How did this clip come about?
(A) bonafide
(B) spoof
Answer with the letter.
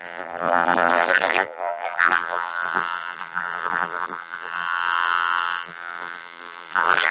B